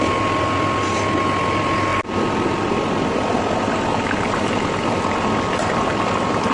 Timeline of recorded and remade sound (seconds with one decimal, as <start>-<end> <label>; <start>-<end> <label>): 0.0-6.5 recorded